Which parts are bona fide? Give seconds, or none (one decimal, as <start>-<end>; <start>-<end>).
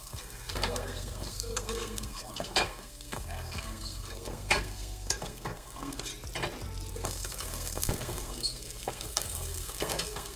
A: 6.1-6.9